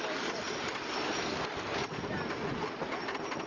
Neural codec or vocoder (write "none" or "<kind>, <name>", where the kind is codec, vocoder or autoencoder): none